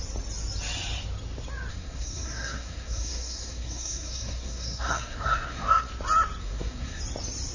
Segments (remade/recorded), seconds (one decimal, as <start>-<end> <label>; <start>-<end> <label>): 0.0-1.7 recorded; 1.7-5.9 remade; 5.9-6.4 recorded; 6.4-7.0 remade; 7.0-7.5 recorded